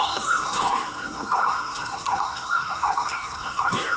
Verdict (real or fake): fake